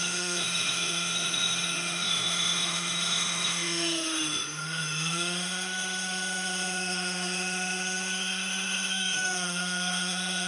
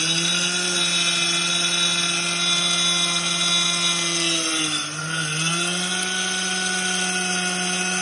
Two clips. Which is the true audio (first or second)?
second